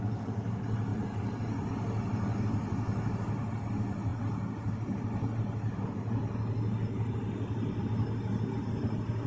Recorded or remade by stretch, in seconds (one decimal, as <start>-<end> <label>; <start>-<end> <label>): 0.0-9.3 recorded